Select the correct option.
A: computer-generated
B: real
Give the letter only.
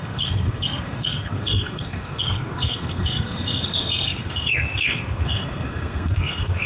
A